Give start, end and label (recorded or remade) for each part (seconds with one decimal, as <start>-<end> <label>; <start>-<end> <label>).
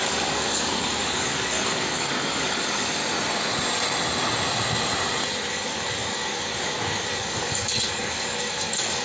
0.0-3.0 remade; 3.0-5.5 recorded; 5.5-9.0 remade